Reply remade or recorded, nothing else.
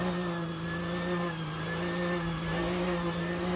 recorded